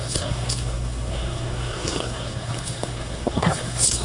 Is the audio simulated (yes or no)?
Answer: yes